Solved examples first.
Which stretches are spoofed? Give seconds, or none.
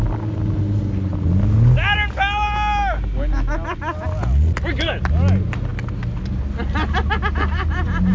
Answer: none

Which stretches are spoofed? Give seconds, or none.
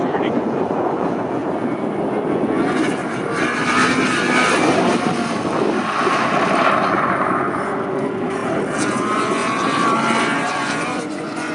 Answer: 0.0-1.4 (vocoder, Vocos); 2.3-3.0; 6.8-8.4; 8.9-9.4; 10.2-11.5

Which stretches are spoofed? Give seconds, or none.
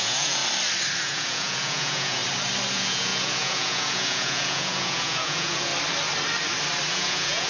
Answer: 0.0-0.4 (vocoder, Vocos); 1.0-2.2; 2.7-5.7; 6.9-7.5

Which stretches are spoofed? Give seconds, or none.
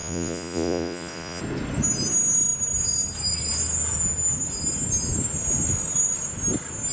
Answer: 0.0-1.4 (vocoder, Vocos)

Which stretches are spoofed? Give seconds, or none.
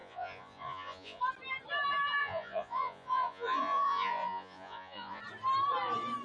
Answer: 0.0-1.2 (vocoder, Vocos); 2.2-5.2